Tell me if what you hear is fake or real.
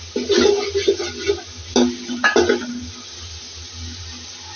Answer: real